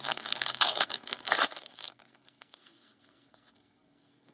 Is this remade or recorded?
remade